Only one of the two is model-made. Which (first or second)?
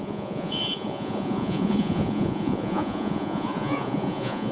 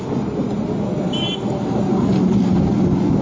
first